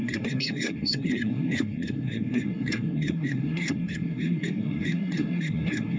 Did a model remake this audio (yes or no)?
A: yes